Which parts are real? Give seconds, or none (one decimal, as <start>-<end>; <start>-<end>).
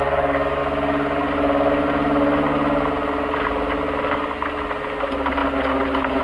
0.0-6.2